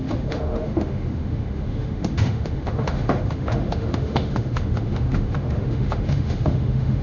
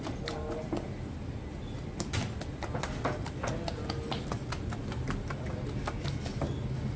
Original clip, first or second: second